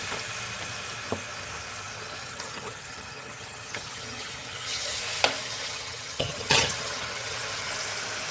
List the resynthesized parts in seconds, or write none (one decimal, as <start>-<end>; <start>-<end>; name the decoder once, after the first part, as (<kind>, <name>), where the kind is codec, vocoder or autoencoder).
2.2-5.0 (vocoder, HiFi-GAN); 5.4-7.7